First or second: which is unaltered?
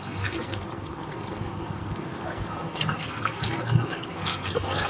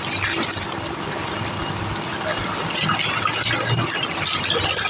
second